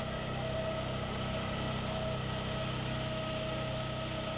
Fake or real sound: real